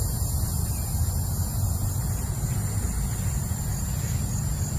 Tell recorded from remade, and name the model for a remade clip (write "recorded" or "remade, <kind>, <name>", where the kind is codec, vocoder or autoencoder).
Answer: recorded